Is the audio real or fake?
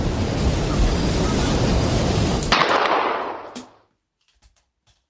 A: real